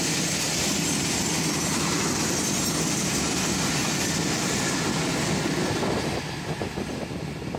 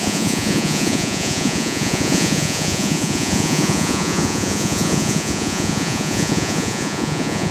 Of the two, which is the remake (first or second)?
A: second